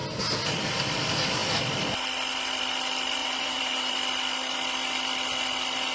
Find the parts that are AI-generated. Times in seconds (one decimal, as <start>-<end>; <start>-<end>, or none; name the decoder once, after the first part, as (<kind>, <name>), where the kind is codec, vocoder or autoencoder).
3.2-3.9 (vocoder, BigVGAN v2)